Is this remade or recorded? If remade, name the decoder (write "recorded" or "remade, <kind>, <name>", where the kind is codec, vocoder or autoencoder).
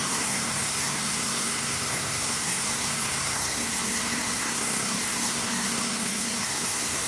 remade, codec, SNAC